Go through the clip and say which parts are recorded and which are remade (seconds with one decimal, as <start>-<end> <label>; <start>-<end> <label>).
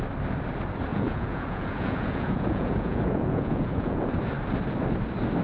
0.0-0.9 recorded; 0.9-4.1 remade; 4.1-5.4 recorded